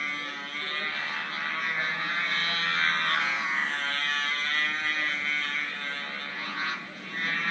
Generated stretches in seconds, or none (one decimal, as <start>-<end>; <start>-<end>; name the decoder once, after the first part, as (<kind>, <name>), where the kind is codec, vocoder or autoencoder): 1.6-2.4 (vocoder, Vocos); 3.2-3.6; 6.3-7.5